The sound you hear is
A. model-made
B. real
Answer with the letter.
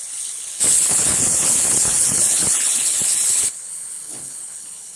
A